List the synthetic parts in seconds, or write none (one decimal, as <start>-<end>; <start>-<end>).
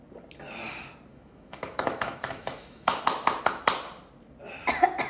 1.1-3.0